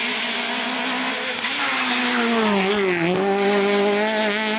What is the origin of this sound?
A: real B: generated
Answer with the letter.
A